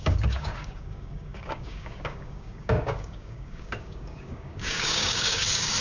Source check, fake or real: fake